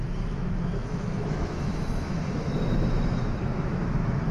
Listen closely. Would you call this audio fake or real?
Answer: fake